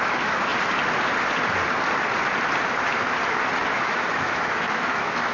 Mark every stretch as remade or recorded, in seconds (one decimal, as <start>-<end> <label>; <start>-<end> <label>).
0.0-0.5 remade; 0.5-3.7 recorded; 3.7-5.3 remade